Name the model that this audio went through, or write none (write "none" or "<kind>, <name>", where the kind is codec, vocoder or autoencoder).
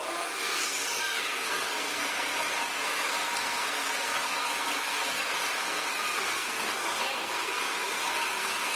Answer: codec, SNAC